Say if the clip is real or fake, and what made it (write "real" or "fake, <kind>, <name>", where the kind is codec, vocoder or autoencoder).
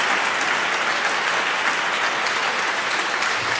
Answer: real